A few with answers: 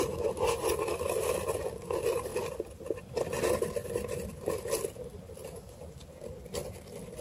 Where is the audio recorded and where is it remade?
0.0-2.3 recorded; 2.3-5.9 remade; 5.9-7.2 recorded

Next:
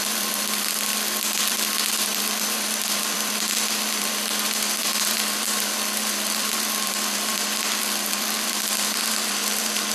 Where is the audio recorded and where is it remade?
0.0-0.9 remade; 0.9-1.4 recorded; 1.4-9.9 remade

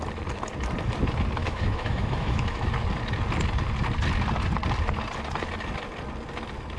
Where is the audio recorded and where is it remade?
0.0-1.4 recorded; 1.4-2.7 remade; 2.7-6.8 recorded

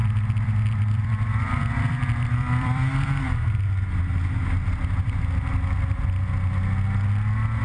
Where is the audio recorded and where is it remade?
0.0-3.6 remade; 3.6-7.6 recorded

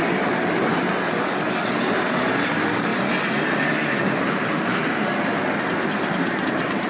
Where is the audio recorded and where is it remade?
0.0-0.9 remade; 0.9-1.7 recorded; 1.7-2.9 remade; 2.9-3.9 recorded; 3.9-5.1 remade; 5.1-6.1 recorded; 6.1-6.9 remade